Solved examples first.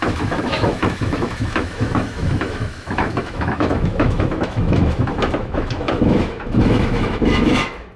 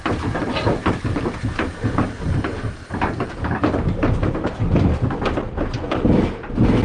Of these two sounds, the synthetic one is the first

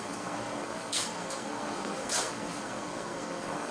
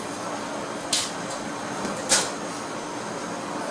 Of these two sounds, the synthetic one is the first